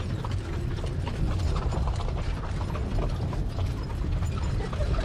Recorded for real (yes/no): yes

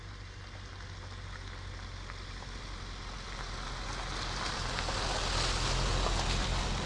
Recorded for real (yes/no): yes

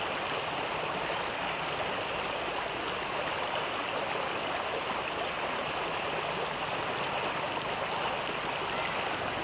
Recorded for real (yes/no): yes